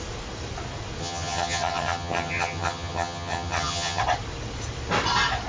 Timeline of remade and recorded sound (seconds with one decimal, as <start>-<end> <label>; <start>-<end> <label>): 0.0-1.0 recorded; 1.0-4.0 remade; 4.0-5.5 recorded